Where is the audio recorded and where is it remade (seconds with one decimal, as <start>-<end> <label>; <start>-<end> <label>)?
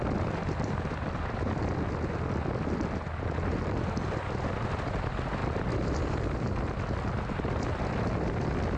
0.0-8.8 recorded